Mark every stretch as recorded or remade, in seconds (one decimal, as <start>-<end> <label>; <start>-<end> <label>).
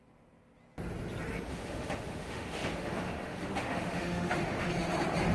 0.0-1.5 recorded; 1.5-4.7 remade; 4.7-5.3 recorded